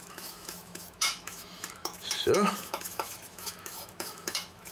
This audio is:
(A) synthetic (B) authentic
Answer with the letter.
A